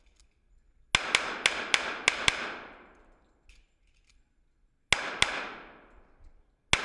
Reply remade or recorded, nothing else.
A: recorded